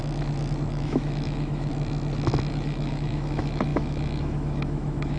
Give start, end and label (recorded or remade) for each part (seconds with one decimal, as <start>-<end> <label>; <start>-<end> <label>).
0.0-0.7 recorded; 0.7-1.7 remade; 1.7-2.5 recorded; 2.5-5.2 remade